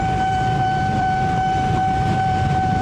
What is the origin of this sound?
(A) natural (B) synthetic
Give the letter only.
B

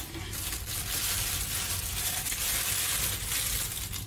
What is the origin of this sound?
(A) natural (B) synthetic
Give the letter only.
A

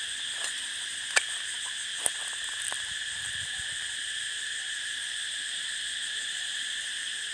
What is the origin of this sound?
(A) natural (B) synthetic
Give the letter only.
A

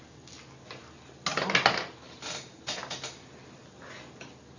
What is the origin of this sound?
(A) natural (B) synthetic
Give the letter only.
A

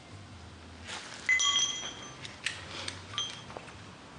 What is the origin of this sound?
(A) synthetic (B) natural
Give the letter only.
B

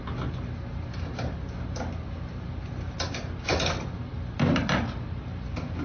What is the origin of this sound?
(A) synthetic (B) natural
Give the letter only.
B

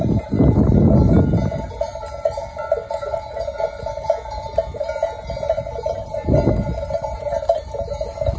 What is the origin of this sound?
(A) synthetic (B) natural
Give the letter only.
B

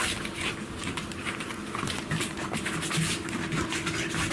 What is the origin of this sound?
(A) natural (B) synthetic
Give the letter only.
A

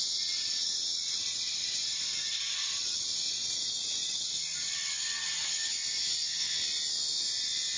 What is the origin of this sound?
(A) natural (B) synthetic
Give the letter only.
A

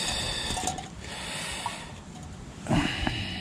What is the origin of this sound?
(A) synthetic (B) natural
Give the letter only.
B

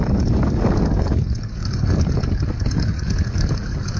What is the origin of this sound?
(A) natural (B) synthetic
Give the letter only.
B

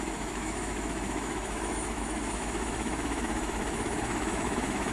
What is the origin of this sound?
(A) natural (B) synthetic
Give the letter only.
B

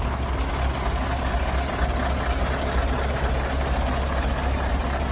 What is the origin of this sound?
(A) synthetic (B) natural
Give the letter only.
B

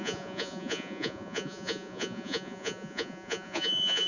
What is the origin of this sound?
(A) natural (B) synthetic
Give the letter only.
B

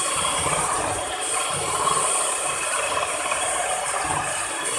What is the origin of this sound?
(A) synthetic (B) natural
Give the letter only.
A